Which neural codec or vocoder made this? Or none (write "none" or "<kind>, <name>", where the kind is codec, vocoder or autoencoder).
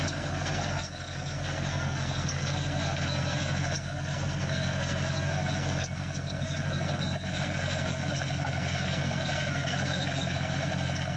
codec, SNAC